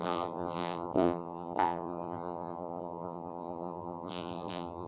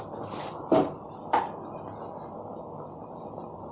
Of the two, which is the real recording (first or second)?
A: second